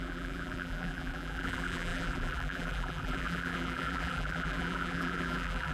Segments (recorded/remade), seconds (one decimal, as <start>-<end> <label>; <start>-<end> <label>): 0.0-5.7 remade